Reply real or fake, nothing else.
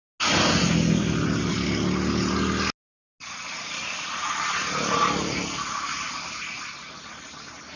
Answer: real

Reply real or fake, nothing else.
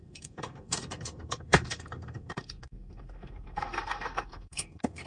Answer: fake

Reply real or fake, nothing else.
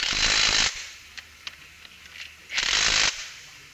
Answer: real